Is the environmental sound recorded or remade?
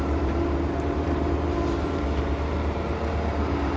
remade